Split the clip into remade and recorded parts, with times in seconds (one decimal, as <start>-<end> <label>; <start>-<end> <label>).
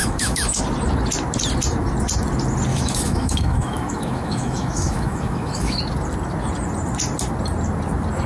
0.0-0.6 remade; 0.6-2.7 recorded; 2.7-5.8 remade; 5.8-8.3 recorded